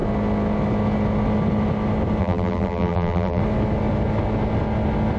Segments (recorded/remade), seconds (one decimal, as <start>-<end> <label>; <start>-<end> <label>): 0.0-2.2 recorded; 2.2-3.4 remade; 3.4-5.2 recorded